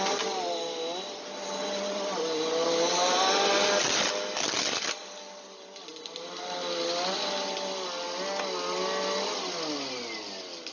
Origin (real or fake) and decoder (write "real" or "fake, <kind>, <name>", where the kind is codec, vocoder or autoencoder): real